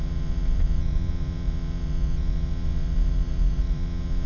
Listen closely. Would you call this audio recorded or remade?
remade